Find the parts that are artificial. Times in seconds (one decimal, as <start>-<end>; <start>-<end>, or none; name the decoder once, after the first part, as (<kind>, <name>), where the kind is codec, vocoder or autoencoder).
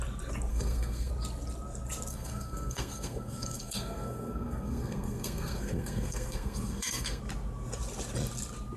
0.5-1.1 (codec, SNAC); 2.1-7.2